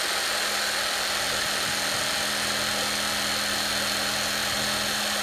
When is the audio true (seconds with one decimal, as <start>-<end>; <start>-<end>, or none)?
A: 0.0-5.2